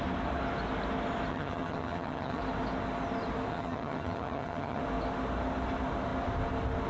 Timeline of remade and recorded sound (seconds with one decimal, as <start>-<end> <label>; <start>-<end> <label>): 0.0-1.3 recorded; 1.3-2.4 remade; 2.4-3.5 recorded; 3.5-4.8 remade; 4.8-6.9 recorded

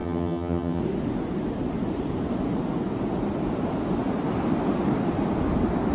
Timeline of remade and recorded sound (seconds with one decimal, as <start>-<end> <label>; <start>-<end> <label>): 0.0-0.8 remade; 0.8-5.9 recorded